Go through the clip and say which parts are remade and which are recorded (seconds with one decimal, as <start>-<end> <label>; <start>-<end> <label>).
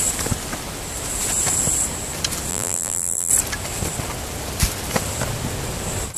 0.0-2.5 recorded; 2.5-3.3 remade; 3.3-6.2 recorded